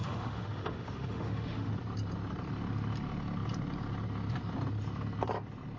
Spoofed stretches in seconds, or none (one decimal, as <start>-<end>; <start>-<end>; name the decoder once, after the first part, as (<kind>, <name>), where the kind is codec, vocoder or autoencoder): 0.0-1.7 (autoencoder, DAC-VAE)